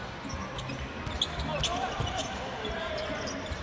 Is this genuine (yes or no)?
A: yes